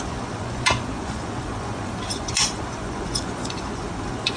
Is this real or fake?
fake